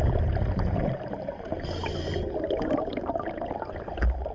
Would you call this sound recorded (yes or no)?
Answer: yes